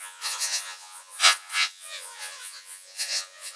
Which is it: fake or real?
fake